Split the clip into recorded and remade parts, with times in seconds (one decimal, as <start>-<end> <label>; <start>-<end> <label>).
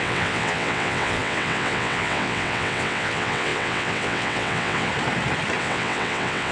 0.0-4.9 remade; 4.9-5.6 recorded; 5.6-6.5 remade